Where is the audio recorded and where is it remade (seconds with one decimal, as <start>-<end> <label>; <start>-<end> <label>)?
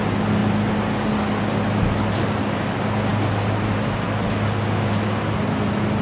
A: 0.0-6.0 recorded